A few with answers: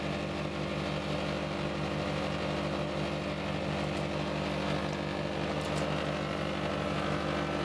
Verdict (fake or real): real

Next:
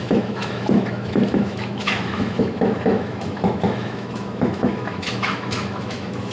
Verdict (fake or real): fake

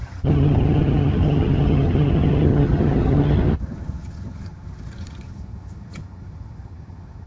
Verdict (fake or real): fake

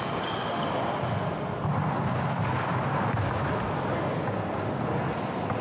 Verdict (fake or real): real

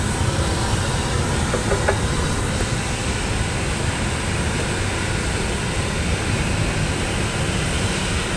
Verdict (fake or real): real